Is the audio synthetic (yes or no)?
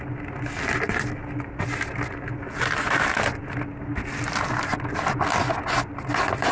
no